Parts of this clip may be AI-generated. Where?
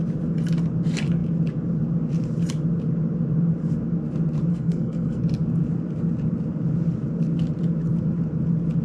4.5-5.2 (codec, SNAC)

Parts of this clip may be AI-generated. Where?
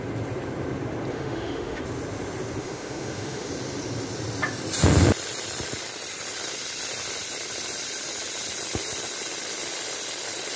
1.1-1.8 (autoencoder, DAC-VAE); 2.6-3.5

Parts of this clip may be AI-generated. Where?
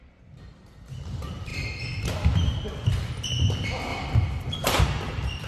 none